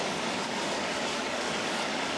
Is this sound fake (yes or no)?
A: yes